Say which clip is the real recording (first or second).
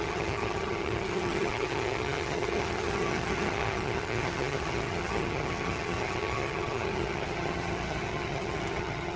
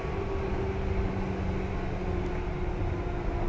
second